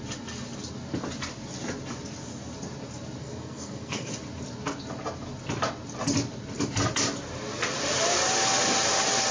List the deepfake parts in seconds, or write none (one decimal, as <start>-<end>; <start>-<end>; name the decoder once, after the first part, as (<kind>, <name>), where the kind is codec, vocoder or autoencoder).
3.2-4.2 (codec, SNAC)